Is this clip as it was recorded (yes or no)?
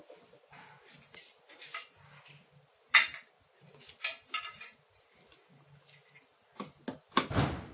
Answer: yes